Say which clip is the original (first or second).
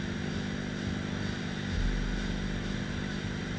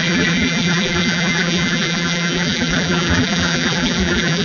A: first